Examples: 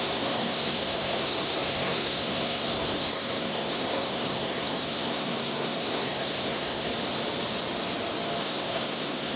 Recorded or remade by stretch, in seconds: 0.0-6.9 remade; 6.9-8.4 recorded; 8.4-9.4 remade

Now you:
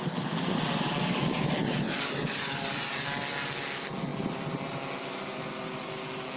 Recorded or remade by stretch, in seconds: 0.0-6.4 recorded

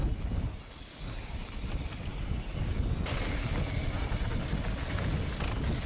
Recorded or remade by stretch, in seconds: 0.0-5.9 recorded